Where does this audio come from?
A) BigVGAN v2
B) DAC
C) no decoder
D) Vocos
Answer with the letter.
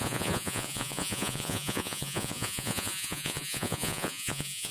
D